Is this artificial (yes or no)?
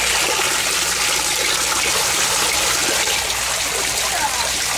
no